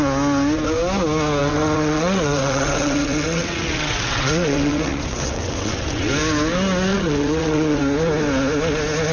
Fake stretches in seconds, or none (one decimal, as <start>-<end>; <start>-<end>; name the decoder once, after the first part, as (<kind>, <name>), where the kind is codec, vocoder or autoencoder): 1.4-6.1 (vocoder, WaveNeXt); 6.9-7.8